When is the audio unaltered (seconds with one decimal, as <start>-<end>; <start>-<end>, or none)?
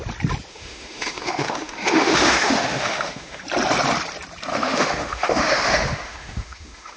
0.0-0.5; 3.4-4.5